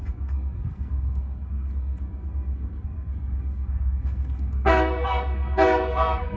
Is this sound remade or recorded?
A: remade